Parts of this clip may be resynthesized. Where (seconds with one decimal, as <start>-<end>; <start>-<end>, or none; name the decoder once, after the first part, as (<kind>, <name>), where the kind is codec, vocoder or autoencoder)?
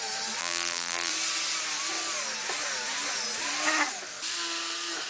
0.4-1.1 (vocoder, BigVGAN v2)